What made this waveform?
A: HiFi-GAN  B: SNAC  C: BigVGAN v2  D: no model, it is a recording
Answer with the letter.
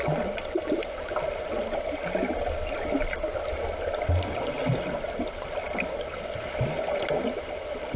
D